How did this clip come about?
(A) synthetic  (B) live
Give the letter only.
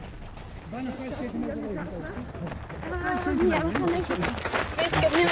B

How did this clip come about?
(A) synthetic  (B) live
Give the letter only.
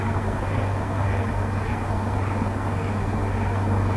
A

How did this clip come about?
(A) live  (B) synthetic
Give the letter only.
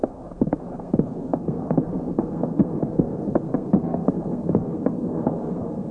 B